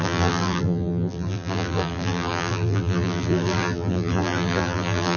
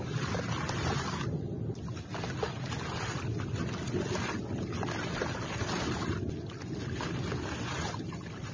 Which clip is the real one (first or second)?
second